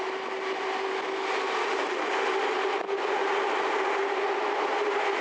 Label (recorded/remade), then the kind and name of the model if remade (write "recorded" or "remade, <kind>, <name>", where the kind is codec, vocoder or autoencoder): recorded